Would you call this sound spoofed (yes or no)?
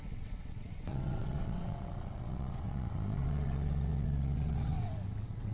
yes